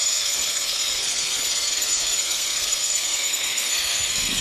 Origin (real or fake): fake